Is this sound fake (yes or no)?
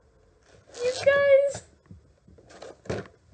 no